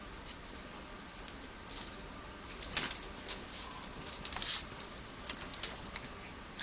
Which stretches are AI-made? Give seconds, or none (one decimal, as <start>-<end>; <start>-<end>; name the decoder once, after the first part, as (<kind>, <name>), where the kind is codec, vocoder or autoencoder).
3.9-4.8 (vocoder, BigVGAN v2)